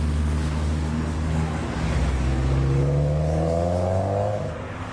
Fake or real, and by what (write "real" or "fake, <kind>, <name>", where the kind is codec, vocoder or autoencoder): fake, codec, DAC